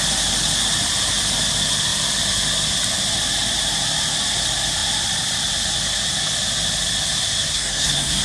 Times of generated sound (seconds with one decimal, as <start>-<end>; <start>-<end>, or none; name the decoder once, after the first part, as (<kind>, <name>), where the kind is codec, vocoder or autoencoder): 7.5-8.2 (codec, SNAC)